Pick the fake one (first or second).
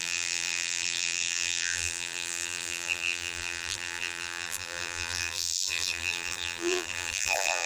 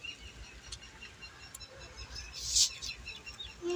first